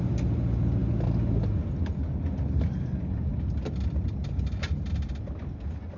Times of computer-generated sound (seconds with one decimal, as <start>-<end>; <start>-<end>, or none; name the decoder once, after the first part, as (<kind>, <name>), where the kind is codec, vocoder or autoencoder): none